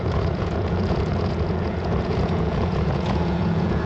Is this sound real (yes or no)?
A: no